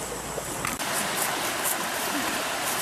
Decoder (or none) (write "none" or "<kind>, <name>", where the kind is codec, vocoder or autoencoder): none